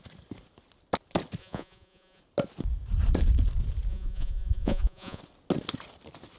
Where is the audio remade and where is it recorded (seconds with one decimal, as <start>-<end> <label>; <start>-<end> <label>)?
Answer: 0.0-1.4 recorded; 1.4-2.2 remade; 2.2-3.9 recorded; 3.9-5.2 remade; 5.2-6.4 recorded